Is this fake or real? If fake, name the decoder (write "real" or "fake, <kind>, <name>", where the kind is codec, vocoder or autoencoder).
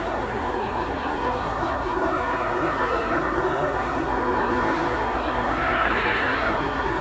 fake, codec, SNAC